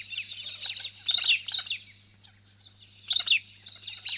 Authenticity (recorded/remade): recorded